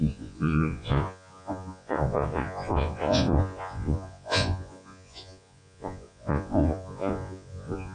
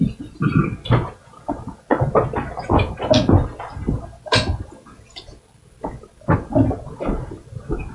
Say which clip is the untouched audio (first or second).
second